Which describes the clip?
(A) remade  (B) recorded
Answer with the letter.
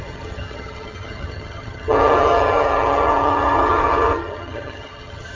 A